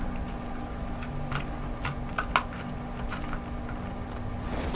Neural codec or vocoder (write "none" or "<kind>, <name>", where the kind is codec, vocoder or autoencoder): none